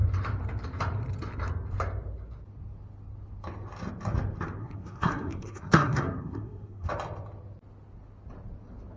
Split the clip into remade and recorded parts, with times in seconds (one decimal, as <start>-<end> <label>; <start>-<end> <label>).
0.0-4.6 recorded; 4.6-6.9 remade; 6.9-9.0 recorded